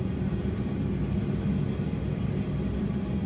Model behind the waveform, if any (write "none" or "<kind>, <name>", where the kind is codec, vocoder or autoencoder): none